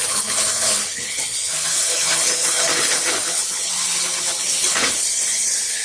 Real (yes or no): no